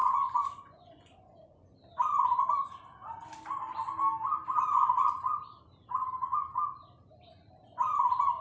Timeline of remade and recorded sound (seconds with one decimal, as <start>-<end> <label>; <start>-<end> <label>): 0.0-1.8 remade; 1.8-8.4 recorded